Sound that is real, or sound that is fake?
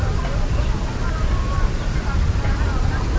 real